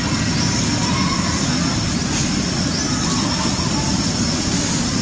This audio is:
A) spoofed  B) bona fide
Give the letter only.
B